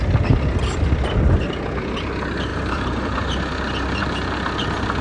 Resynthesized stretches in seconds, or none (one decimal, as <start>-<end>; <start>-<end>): 2.5-4.0

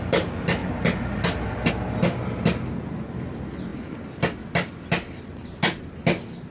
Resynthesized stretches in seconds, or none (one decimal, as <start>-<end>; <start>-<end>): none

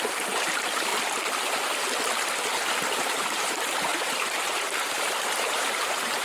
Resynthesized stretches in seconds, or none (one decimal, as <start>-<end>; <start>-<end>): 0.0-0.9; 2.7-6.2

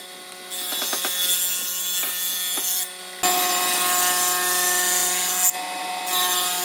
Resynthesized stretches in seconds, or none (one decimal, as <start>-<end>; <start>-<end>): none

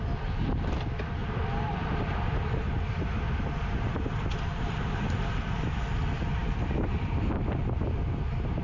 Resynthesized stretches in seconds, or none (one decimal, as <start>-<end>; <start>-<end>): 1.2-5.8; 6.4-7.2

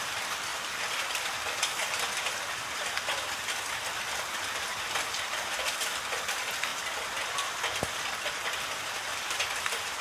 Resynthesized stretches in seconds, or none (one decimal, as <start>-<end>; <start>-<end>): 0.5-2.3